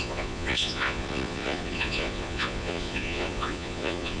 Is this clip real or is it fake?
fake